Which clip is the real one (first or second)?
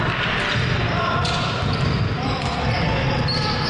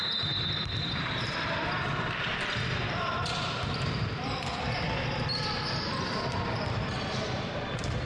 first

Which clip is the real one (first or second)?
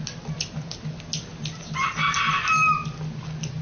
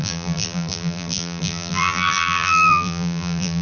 first